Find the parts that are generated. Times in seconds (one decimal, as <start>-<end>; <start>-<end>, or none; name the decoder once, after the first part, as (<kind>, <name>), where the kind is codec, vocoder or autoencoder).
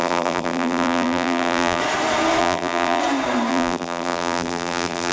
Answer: 0.0-1.8 (vocoder, BigVGAN v2); 2.4-3.0; 3.5-5.1